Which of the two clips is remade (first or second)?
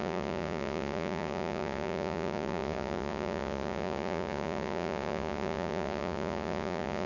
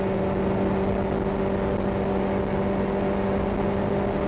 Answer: first